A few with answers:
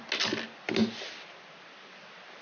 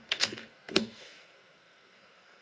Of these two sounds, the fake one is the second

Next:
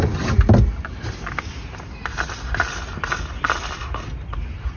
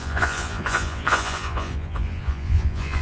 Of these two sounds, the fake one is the second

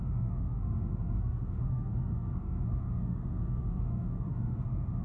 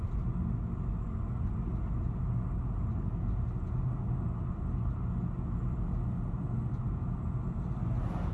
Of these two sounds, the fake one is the first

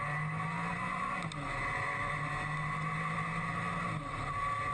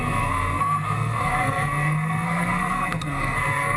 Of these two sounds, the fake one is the second